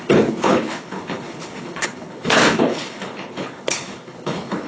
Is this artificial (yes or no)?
yes